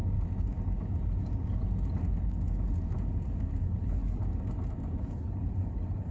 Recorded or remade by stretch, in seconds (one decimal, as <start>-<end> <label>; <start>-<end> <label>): 0.0-3.6 recorded; 3.6-4.2 remade; 4.2-5.0 recorded; 5.0-6.1 remade